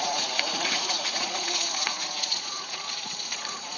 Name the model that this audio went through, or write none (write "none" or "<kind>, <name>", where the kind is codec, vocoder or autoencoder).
vocoder, Vocos